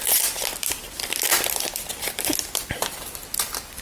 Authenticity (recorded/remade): recorded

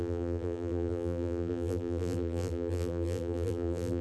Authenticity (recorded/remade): remade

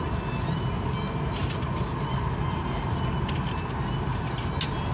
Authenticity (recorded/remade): recorded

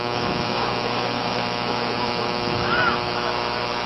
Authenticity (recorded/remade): remade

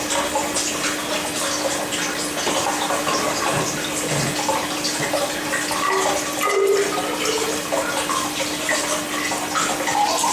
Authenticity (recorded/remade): recorded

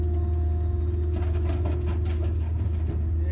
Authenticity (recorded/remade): recorded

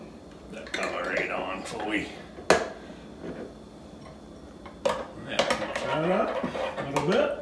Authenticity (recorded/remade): recorded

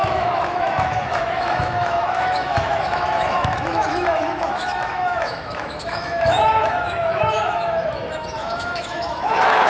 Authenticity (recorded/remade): remade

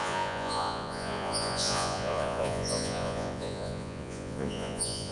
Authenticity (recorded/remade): remade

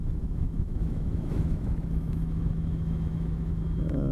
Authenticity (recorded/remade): remade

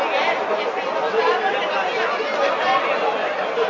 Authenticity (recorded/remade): recorded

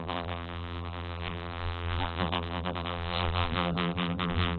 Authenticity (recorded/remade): remade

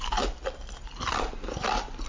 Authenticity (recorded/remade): recorded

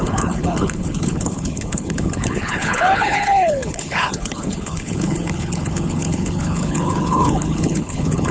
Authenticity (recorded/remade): remade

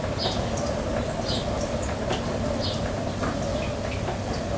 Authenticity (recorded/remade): recorded